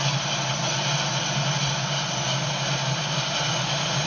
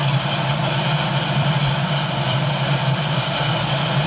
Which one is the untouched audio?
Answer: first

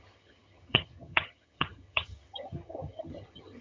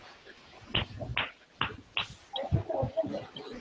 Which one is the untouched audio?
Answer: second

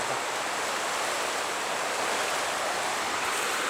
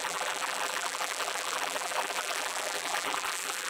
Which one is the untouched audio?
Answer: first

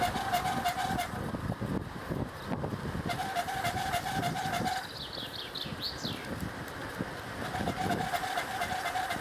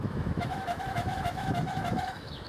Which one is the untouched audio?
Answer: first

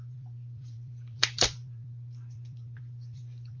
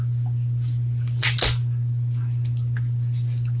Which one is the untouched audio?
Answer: second